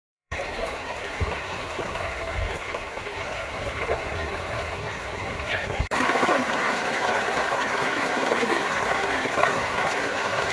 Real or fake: fake